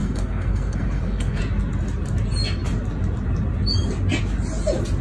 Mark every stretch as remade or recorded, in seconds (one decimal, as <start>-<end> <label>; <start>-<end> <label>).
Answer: 0.0-1.4 remade; 1.4-5.0 recorded